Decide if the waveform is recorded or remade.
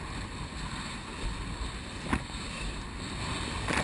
recorded